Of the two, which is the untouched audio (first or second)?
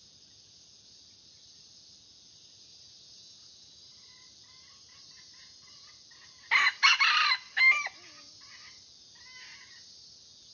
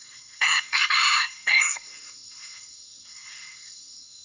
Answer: first